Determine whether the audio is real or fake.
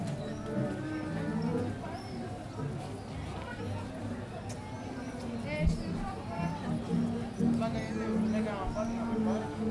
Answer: real